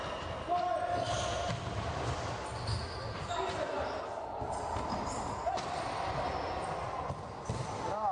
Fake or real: real